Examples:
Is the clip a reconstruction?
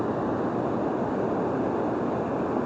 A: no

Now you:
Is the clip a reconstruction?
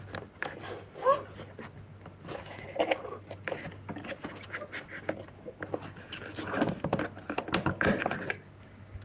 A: no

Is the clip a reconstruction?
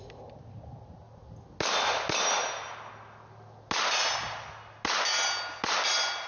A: no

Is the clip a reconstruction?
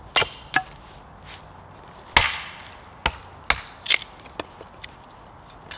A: no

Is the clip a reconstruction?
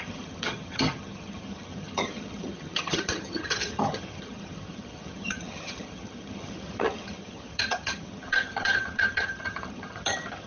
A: yes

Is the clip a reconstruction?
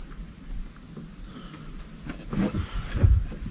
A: no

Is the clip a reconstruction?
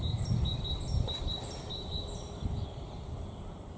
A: no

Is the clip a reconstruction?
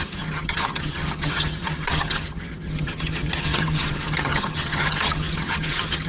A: yes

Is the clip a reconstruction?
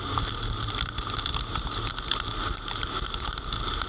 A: no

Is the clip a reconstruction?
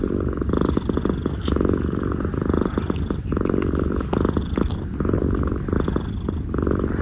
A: no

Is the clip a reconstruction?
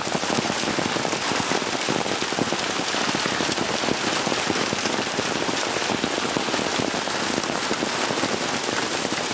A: no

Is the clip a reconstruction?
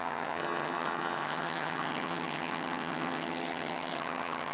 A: yes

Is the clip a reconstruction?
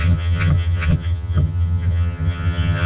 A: yes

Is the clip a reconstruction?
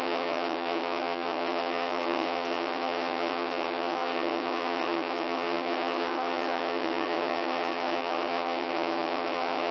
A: yes